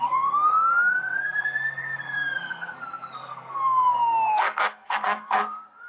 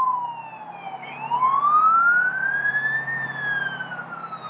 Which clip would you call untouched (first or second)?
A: second